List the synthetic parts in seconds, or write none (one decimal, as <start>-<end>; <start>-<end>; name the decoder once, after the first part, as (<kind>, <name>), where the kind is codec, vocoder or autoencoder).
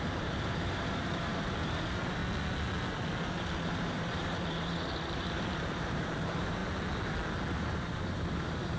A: 0.0-2.2 (vocoder, BigVGAN v2); 3.6-6.6; 7.5-8.8